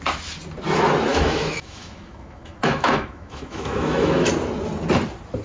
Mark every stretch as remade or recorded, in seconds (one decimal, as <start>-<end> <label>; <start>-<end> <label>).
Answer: 0.0-1.1 recorded; 1.1-4.3 remade; 4.3-5.4 recorded